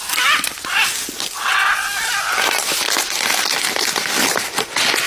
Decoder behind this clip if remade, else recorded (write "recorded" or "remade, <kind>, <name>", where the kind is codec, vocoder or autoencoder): recorded